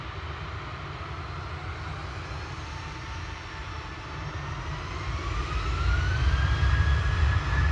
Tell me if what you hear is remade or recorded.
recorded